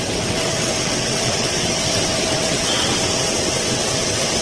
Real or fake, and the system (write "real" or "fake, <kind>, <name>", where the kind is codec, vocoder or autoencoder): fake, vocoder, WaveNeXt